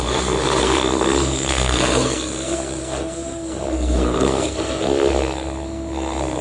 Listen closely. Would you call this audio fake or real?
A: fake